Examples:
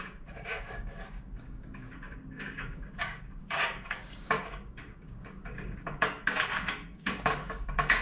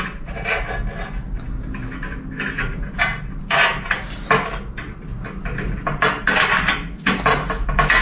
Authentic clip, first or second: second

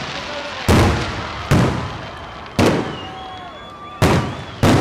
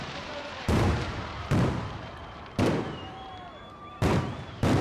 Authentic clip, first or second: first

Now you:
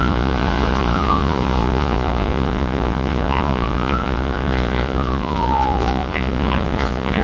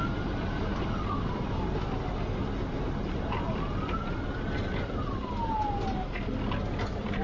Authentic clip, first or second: second